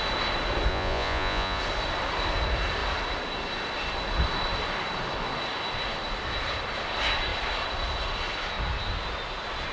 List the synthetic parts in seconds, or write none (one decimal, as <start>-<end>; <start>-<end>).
0.7-1.6